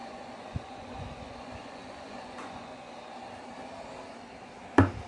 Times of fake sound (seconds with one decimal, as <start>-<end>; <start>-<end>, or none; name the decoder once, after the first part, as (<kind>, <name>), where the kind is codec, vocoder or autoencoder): 0.0-2.9 (vocoder, Vocos)